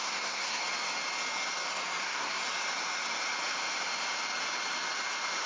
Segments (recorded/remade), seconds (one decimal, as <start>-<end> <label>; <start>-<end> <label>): 0.0-0.6 remade; 0.6-2.0 recorded; 2.0-2.4 remade; 2.4-5.5 recorded

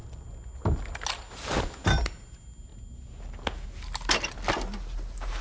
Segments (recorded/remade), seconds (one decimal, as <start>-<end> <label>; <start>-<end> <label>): 0.0-5.4 recorded